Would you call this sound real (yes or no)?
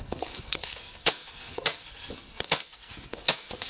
no